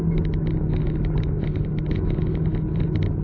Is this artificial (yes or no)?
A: no